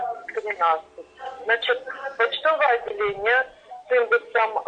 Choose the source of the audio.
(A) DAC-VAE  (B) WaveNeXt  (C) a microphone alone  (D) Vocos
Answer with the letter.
C